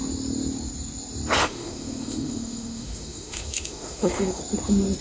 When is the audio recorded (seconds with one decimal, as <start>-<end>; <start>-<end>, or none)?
0.0-1.4; 4.4-5.0